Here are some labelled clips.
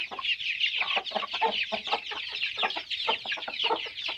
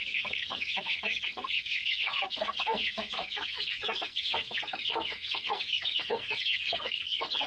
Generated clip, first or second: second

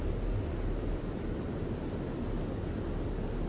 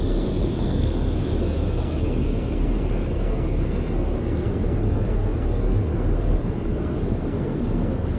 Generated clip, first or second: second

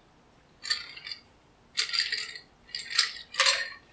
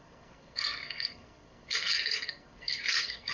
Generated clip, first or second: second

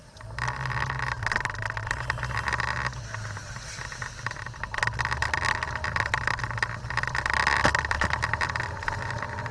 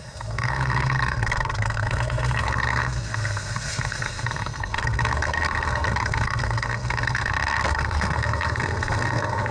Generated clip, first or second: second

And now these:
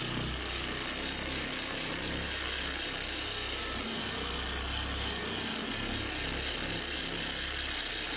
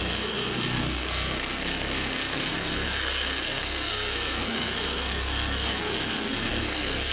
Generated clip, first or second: second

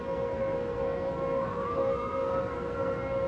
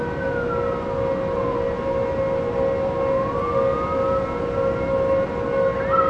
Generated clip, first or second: first